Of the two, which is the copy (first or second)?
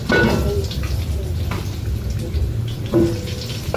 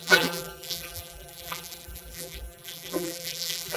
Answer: second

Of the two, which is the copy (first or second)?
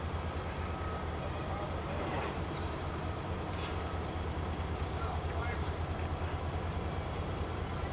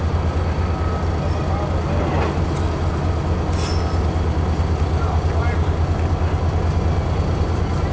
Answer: first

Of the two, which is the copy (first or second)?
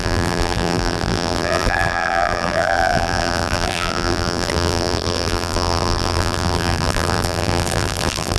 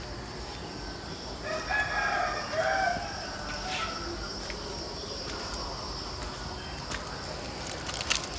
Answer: first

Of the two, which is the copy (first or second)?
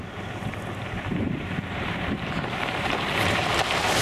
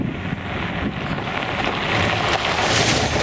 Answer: first